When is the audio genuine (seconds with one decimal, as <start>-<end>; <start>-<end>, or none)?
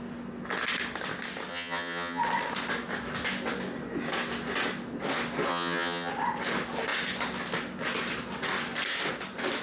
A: 0.0-1.5; 2.2-5.5; 6.1-9.6